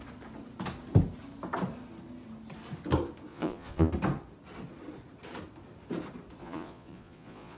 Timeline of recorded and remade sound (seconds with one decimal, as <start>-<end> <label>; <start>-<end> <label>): 0.0-3.3 recorded; 3.3-3.9 remade; 3.9-6.4 recorded; 6.4-7.6 remade